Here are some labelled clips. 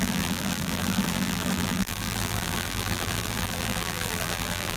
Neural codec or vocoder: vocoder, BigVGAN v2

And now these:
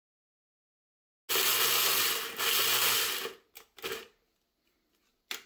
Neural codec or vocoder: none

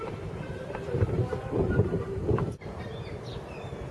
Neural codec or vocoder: vocoder, BigVGAN v2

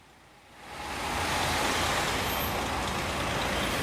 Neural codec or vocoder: none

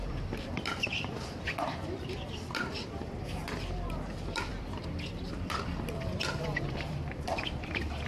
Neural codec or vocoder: vocoder, BigVGAN v2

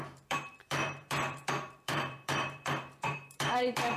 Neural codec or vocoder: vocoder, BigVGAN v2